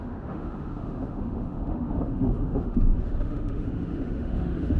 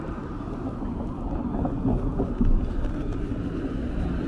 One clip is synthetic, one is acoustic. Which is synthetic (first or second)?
first